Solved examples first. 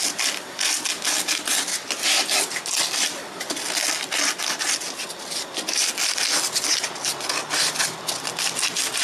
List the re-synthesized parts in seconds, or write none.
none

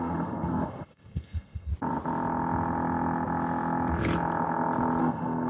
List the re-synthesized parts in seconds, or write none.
0.0-1.7 (codec, SNAC); 5.0-5.5

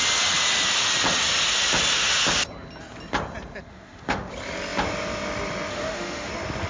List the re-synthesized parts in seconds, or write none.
3.7-4.3 (autoencoder, DAC-VAE); 5.7-6.3

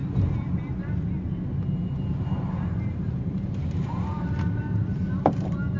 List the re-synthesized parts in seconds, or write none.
3.1-5.0 (vocoder, BigVGAN v2)

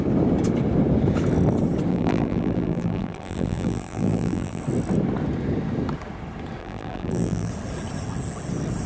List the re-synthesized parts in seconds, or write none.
1.9-4.6 (vocoder, BigVGAN v2); 6.6-7.5

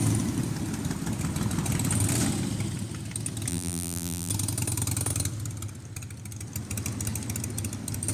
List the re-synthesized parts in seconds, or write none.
3.5-4.3 (vocoder, BigVGAN v2)

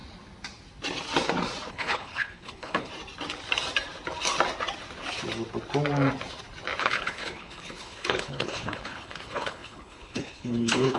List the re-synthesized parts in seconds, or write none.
1.7-2.9 (codec, HILCodec); 6.8-11.0